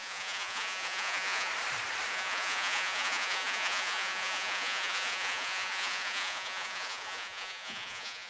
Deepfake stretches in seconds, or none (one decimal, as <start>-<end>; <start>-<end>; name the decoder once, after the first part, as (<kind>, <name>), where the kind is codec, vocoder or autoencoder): 0.0-1.5 (vocoder, Vocos); 2.1-8.3